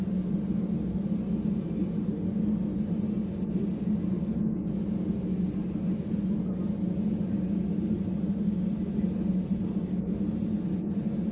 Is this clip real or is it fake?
real